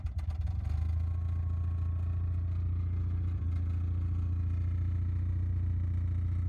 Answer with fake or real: real